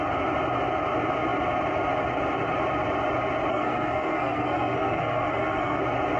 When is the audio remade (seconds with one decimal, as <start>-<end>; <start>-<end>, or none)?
3.5-5.8

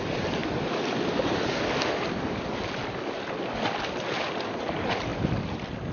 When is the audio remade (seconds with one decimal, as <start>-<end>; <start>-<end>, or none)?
none

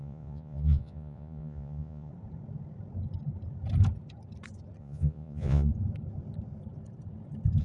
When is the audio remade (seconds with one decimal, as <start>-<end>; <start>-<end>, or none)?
0.0-2.1; 4.8-5.7

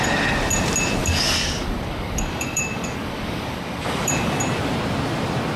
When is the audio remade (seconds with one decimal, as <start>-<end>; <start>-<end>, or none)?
1.0-4.4

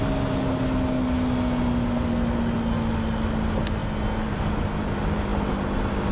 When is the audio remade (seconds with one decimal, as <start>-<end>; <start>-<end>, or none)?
none

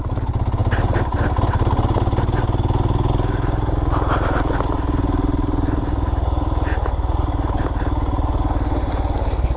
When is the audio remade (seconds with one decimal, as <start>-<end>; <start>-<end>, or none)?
none

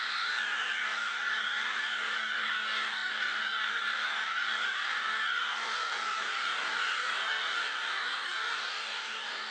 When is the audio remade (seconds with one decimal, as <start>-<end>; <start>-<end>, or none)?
0.0-9.5